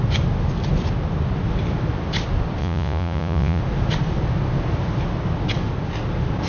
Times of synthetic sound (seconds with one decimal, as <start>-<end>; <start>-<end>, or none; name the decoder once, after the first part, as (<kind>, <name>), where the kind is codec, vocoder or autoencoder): 2.6-3.6 (vocoder, Vocos)

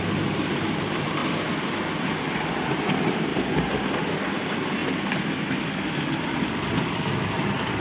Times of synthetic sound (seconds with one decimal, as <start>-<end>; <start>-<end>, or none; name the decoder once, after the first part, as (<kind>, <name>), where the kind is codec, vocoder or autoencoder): none

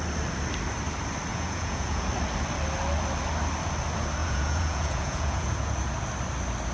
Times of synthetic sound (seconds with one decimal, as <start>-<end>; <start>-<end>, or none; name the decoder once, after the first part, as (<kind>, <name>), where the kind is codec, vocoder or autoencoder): 1.3-2.1 (vocoder, Vocos); 4.2-5.7

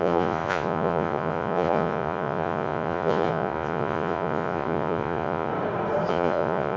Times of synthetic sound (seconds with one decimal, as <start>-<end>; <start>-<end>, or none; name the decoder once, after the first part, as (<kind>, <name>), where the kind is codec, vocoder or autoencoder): 0.0-5.5 (vocoder, Vocos); 6.1-6.8

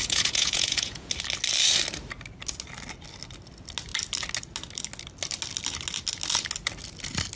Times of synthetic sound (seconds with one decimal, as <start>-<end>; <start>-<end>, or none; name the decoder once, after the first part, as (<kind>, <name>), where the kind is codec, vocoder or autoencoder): 0.0-1.1 (vocoder, Vocos)

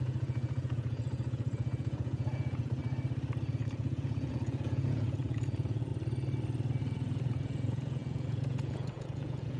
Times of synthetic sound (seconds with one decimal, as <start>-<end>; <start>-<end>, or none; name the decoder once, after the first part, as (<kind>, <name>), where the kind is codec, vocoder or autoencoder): 0.0-2.8 (vocoder, Vocos); 3.5-5.9; 6.8-9.6

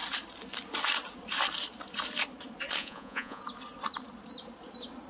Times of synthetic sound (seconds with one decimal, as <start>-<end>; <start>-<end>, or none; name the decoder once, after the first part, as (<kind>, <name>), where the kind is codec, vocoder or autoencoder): 2.8-3.4 (vocoder, Vocos)